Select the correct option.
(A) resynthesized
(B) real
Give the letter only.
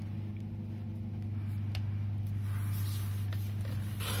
B